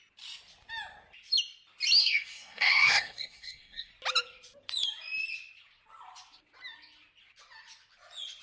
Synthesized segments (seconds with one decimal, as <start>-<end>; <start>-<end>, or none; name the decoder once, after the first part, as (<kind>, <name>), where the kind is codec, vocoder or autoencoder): 2.0-3.9 (codec, SNAC)